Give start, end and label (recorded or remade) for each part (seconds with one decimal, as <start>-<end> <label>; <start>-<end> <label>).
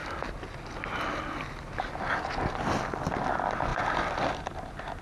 0.0-5.0 recorded